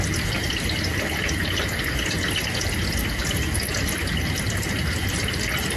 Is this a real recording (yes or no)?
yes